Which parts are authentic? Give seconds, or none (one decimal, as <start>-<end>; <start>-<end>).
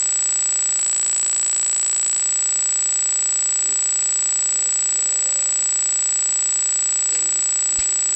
0.0-8.2